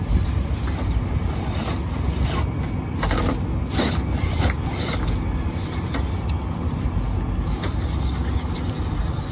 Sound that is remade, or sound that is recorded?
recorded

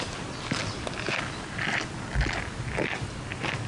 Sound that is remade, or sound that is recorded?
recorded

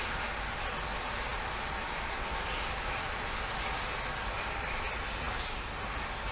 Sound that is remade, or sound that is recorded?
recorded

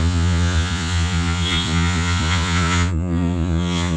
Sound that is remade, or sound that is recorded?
remade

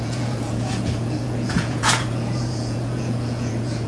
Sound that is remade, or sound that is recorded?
remade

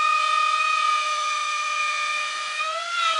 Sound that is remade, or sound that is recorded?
remade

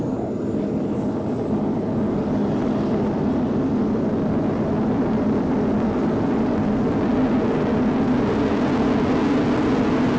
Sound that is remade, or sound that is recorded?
recorded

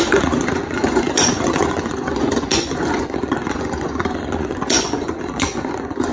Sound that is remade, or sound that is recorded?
remade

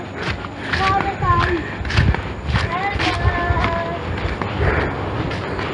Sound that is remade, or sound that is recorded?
recorded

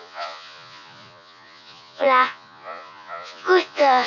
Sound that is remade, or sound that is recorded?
remade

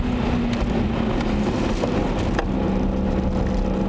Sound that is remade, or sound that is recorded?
recorded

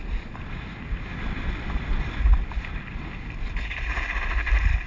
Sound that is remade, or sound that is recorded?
recorded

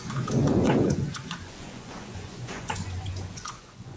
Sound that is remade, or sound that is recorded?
remade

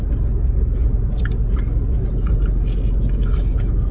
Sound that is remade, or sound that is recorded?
recorded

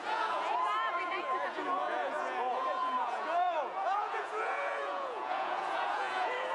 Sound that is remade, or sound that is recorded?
remade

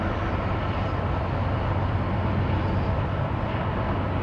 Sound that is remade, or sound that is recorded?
recorded